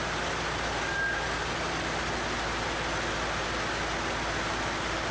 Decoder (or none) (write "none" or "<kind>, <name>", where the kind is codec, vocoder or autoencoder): none